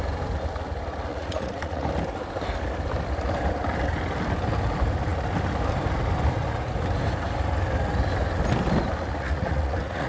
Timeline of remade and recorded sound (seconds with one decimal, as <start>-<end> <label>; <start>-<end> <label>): 0.0-1.1 recorded; 1.1-1.9 remade; 1.9-9.1 recorded; 9.1-10.1 remade